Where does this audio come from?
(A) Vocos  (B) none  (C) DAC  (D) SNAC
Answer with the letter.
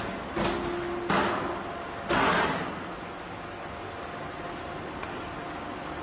B